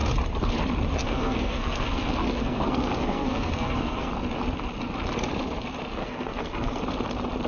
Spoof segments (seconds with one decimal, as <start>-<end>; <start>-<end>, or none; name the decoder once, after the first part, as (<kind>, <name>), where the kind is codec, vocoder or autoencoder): 1.0-4.1 (codec, SNAC); 6.0-6.8